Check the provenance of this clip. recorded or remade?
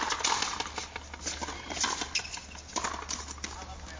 recorded